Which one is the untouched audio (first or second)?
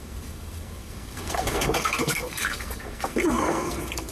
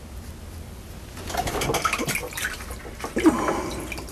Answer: second